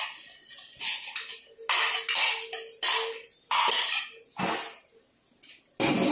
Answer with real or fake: real